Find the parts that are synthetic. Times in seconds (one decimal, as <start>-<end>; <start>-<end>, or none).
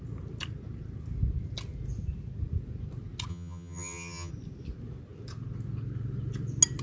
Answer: 3.3-4.3